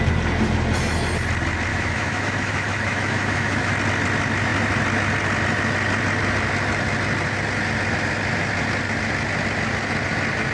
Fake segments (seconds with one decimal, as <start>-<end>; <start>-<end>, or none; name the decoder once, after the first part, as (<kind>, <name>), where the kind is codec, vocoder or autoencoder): 1.7-3.7 (autoencoder, DAC-VAE)